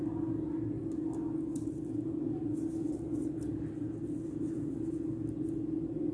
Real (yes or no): yes